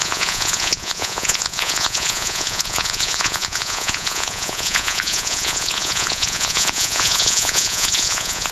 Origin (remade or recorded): remade